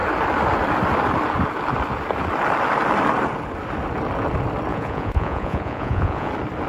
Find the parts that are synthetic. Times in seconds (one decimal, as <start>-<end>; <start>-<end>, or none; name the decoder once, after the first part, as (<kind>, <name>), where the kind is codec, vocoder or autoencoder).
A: 4.7-6.3 (vocoder, Vocos)